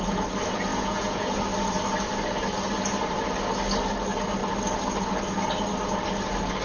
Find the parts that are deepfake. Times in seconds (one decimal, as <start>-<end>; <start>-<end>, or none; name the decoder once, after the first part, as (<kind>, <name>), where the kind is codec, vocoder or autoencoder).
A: 0.7-1.4 (vocoder, Vocos)